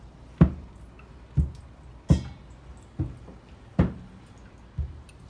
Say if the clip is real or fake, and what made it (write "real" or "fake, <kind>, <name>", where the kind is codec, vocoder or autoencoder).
real